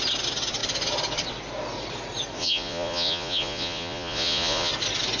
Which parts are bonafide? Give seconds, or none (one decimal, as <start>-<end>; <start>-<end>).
0.0-2.4; 4.7-5.2